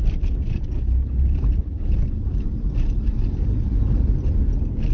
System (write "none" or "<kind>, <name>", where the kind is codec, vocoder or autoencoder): vocoder, BigVGAN v2